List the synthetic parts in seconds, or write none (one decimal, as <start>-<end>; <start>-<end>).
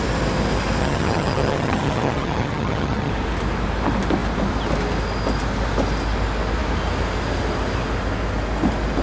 0.8-3.1